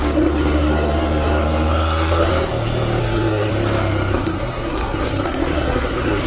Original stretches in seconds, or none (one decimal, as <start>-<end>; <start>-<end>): 2.3-3.0; 3.5-4.1